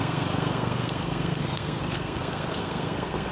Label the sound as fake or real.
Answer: fake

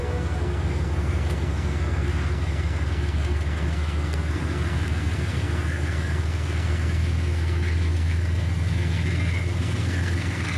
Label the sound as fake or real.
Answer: fake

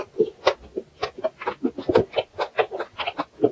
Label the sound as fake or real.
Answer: real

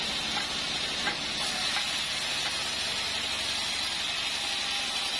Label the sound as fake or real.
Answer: real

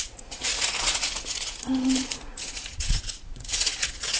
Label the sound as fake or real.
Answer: fake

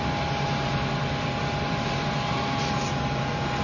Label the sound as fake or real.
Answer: real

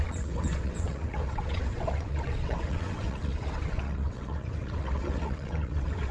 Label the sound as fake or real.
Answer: fake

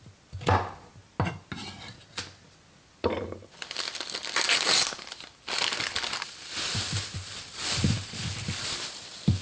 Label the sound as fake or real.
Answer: real